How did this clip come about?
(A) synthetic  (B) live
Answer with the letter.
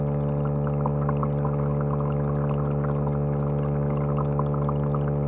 B